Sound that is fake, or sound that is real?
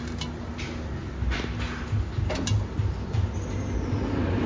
real